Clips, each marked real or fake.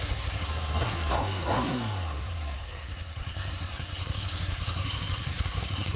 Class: fake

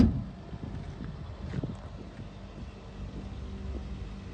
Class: real